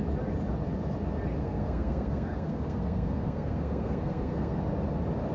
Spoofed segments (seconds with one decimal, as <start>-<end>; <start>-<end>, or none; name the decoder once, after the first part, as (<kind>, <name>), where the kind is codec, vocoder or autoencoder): 1.4-4.6 (codec, SNAC)